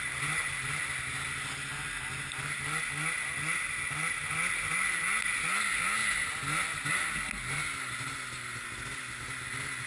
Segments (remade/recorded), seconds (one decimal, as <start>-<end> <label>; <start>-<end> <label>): 0.0-9.9 recorded